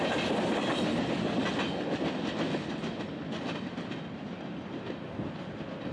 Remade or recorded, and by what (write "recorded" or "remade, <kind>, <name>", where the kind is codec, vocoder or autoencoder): recorded